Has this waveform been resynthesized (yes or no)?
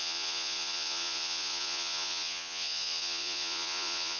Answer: yes